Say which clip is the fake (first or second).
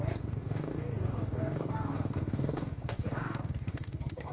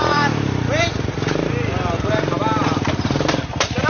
first